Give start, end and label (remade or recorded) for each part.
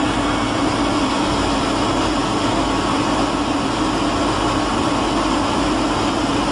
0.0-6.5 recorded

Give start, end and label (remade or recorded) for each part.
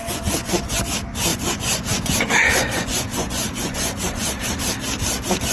0.0-0.8 remade; 0.8-1.3 recorded; 1.3-4.6 remade; 4.6-5.5 recorded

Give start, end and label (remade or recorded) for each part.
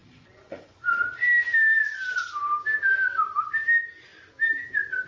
0.0-1.0 remade; 1.0-5.1 recorded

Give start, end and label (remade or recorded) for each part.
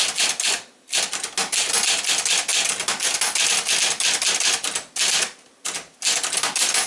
0.0-6.9 recorded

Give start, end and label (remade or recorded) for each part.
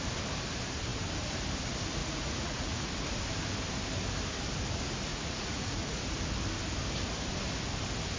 0.0-2.0 recorded; 2.0-2.9 remade; 2.9-5.1 recorded; 5.1-6.0 remade; 6.0-8.2 recorded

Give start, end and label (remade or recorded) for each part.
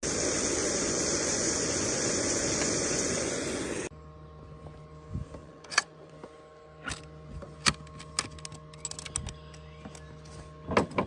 0.0-0.6 recorded; 0.6-3.6 remade; 3.6-5.4 recorded; 5.4-6.1 remade; 6.1-11.1 recorded